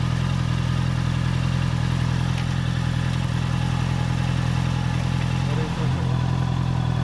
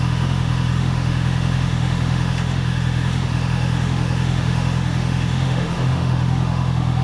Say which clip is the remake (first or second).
second